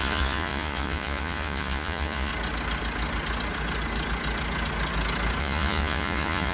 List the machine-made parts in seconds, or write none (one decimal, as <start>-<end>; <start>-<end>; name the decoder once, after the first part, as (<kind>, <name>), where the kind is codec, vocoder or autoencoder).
0.0-2.3 (vocoder, Vocos); 5.4-6.5